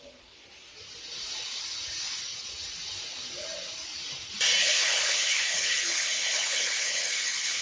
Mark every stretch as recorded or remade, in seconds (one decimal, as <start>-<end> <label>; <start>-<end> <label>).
0.0-0.4 remade; 0.4-4.6 recorded; 4.6-7.6 remade